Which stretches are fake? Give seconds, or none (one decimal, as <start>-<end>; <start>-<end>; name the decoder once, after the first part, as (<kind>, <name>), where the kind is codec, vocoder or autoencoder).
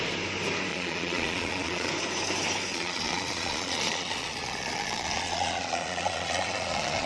0.7-1.9 (vocoder, Vocos); 2.7-7.1